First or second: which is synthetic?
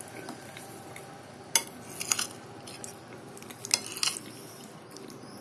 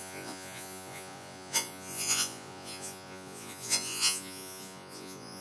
second